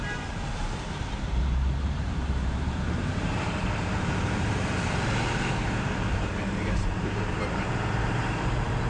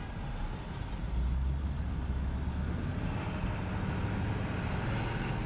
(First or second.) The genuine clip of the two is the second